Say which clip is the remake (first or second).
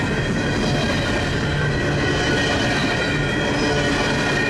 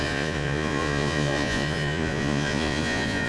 second